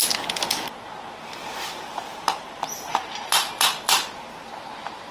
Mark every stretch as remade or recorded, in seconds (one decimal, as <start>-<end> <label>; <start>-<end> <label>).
0.0-1.4 recorded; 1.4-4.5 remade; 4.5-5.1 recorded